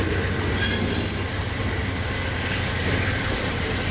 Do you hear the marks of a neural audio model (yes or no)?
no